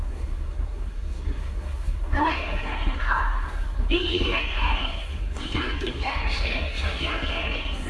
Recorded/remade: remade